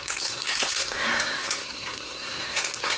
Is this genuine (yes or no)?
no